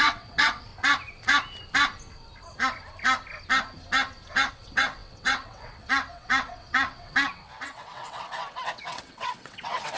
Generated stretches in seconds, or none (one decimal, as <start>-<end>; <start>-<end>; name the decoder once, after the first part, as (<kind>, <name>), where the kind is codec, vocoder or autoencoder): 0.0-0.7 (vocoder, WaveNeXt); 4.5-10.0